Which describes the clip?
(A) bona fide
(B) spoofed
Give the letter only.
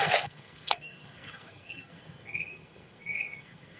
B